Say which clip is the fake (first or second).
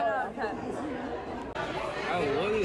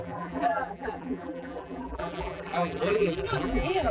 second